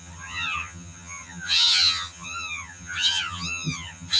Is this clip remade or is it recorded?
remade